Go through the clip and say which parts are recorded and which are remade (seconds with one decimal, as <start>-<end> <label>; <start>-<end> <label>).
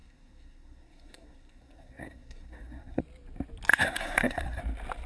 0.0-3.0 remade; 3.0-3.7 recorded; 3.7-4.6 remade; 4.6-5.1 recorded